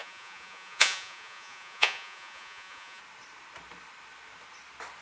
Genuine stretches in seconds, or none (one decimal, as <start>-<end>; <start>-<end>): 3.0-5.0

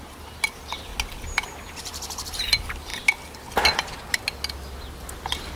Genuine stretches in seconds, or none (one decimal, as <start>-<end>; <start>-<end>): 0.9-1.8; 2.9-4.9

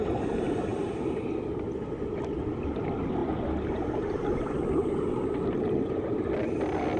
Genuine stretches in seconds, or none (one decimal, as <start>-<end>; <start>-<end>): 0.0-7.0

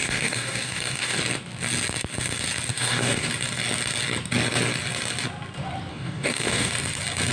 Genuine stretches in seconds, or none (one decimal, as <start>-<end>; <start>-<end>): 1.2-2.7; 3.3-5.9; 6.7-7.3

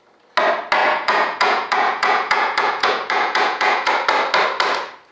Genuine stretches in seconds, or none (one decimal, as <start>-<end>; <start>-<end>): 0.0-0.8; 3.9-5.1

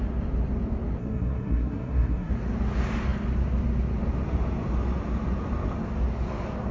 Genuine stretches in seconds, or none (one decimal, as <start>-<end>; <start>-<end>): 0.0-1.0; 2.3-6.7

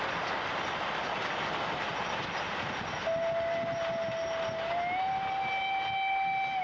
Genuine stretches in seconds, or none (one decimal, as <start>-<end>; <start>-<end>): 0.0-6.6